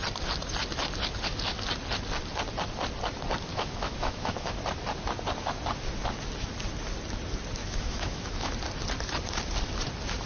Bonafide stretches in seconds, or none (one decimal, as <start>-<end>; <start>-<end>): 0.0-3.5; 4.5-7.6; 8.5-10.3